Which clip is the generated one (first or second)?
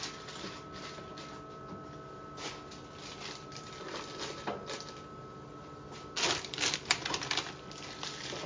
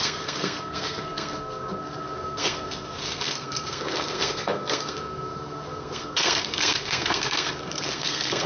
second